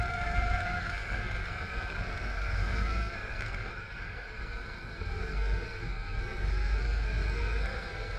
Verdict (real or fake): fake